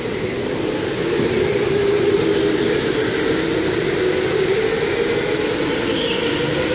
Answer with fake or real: real